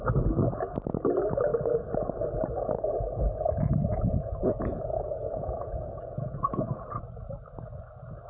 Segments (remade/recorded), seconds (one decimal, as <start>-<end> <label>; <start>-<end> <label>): 0.0-3.8 recorded; 3.8-7.0 remade; 7.0-8.3 recorded